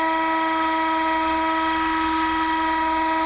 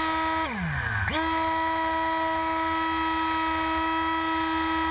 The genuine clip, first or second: second